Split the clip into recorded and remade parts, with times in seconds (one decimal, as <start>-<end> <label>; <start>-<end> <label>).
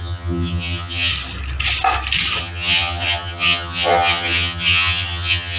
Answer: 0.0-1.1 remade; 1.1-2.4 recorded; 2.4-5.6 remade